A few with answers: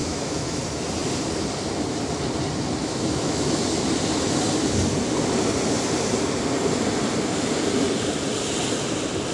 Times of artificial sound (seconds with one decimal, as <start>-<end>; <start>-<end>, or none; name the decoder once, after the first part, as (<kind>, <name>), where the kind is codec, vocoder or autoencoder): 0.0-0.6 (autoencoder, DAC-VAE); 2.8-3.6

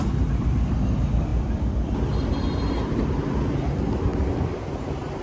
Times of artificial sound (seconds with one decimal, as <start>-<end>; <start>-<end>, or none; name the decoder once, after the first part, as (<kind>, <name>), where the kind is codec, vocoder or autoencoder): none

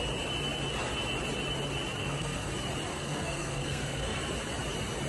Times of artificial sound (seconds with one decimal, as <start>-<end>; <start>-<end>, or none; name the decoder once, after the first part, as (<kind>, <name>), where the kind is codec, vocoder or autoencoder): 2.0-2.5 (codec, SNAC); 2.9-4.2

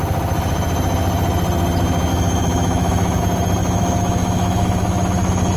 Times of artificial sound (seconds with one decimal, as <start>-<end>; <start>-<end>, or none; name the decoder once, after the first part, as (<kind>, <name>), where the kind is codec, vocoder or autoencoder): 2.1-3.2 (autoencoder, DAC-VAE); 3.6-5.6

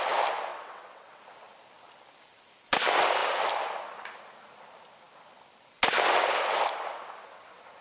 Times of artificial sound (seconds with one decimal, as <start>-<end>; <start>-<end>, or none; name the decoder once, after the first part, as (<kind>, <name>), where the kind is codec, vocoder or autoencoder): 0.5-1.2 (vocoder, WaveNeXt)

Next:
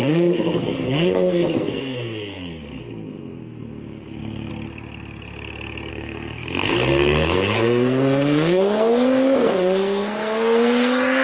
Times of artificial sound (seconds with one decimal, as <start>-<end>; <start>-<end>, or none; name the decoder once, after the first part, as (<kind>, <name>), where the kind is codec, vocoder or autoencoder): 0.0-4.5 (codec, SNAC); 5.9-11.2